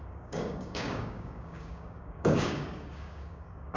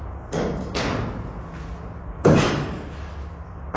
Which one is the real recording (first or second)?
second